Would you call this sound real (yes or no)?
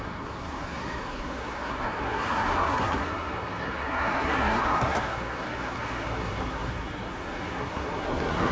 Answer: no